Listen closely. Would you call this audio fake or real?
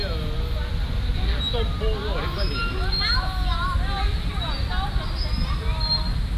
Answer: real